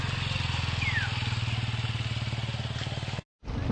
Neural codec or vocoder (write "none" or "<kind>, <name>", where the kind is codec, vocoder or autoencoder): none